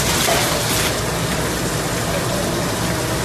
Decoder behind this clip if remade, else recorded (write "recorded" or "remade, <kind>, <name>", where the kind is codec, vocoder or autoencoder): recorded